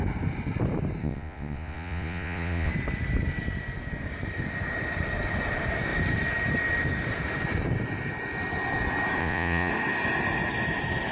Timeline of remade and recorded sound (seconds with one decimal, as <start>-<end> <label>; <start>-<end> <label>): 0.0-1.0 recorded; 1.0-2.7 remade; 2.7-9.2 recorded; 9.2-9.7 remade; 9.7-11.1 recorded